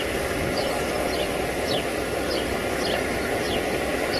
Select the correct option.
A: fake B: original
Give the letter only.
B